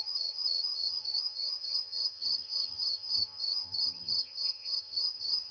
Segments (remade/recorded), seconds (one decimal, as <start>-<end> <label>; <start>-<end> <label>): 0.0-5.5 remade

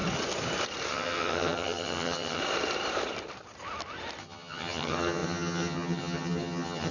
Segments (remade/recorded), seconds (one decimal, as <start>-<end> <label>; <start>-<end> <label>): 0.0-0.9 recorded; 0.9-2.4 remade; 2.4-4.2 recorded; 4.2-6.9 remade

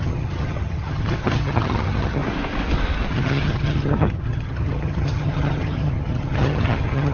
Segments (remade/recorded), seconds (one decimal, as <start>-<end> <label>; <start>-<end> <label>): 0.0-2.2 remade; 2.2-3.1 recorded; 3.1-7.1 remade